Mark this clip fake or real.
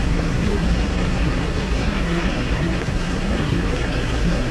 fake